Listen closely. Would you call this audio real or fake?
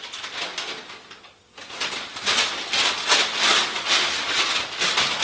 real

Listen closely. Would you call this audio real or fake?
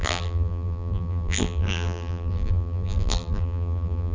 fake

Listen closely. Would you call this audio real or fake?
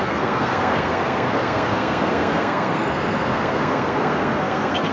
fake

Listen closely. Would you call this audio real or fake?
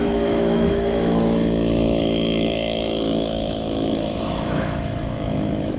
fake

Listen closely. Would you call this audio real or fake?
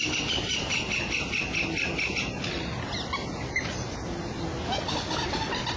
real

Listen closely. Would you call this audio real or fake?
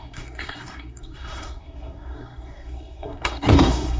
fake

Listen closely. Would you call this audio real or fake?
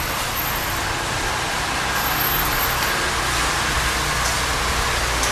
real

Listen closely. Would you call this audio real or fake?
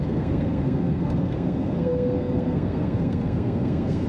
fake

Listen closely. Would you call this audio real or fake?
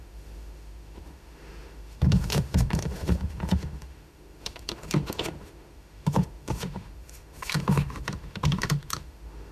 fake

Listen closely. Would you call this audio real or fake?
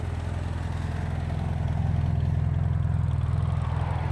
real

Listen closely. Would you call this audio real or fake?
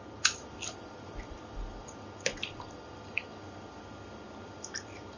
fake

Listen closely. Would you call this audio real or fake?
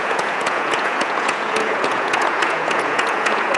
fake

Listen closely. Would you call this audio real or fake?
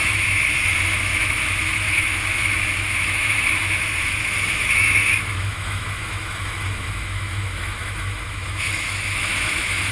fake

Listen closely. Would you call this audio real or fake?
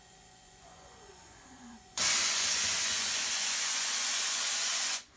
fake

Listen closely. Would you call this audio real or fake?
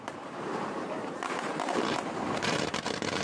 fake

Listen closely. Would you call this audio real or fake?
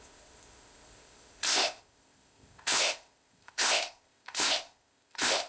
fake